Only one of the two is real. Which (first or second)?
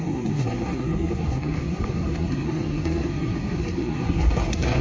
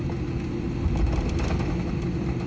second